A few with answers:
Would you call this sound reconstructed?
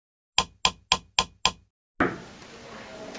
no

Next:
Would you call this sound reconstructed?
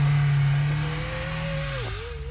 no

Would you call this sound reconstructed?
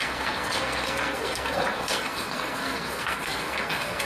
yes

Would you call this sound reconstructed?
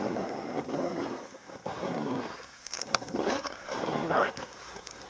yes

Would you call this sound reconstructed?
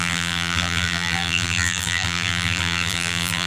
yes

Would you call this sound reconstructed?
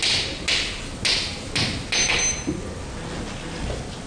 no